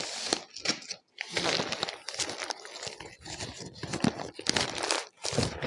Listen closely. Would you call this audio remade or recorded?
recorded